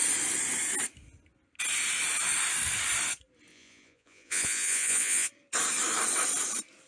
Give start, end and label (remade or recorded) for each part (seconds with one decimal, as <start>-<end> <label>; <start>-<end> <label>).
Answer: 0.0-3.5 recorded; 3.5-5.3 remade; 5.3-6.9 recorded